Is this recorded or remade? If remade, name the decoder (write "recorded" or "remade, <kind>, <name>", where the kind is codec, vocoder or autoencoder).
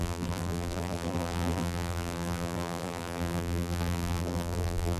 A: remade, vocoder, BigVGAN v2